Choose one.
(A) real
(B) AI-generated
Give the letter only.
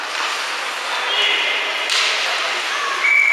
A